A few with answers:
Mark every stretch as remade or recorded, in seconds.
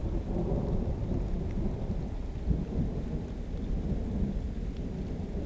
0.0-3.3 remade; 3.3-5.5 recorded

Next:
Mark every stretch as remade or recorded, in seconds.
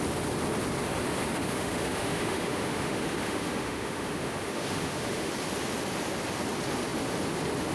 0.0-1.4 recorded; 1.4-5.3 remade; 5.3-7.7 recorded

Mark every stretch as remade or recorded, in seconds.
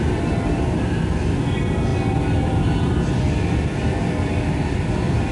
0.0-5.3 recorded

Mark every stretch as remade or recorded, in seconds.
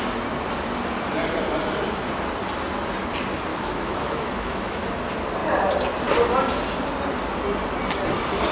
0.0-3.5 recorded; 3.5-4.8 remade; 4.8-8.5 recorded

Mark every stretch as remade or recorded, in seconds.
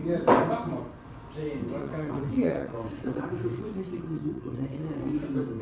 0.0-1.8 recorded; 1.8-5.1 remade; 5.1-5.6 recorded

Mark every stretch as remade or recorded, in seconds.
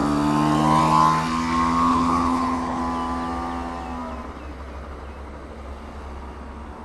0.0-1.9 recorded; 1.9-2.8 remade; 2.8-6.8 recorded